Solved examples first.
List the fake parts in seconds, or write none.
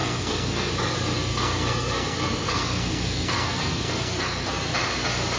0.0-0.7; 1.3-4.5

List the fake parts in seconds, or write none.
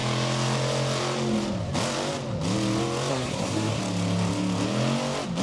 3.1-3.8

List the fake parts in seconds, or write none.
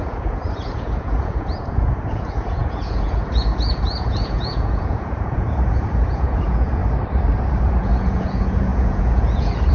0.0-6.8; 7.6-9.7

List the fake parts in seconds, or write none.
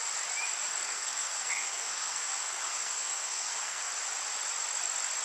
0.8-3.9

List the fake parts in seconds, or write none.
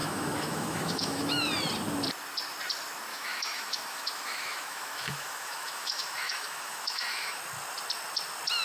0.0-1.5; 3.1-7.4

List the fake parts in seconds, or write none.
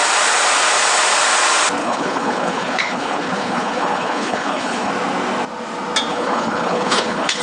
1.8-4.9; 6.1-7.4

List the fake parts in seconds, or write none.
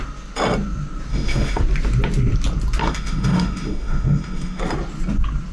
1.1-1.6; 2.8-4.6